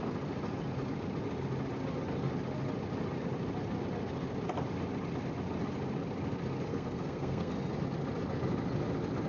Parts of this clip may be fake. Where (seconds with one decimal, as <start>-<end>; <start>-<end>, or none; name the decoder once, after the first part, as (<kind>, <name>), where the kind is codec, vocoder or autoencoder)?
6.7-7.5 (codec, SNAC)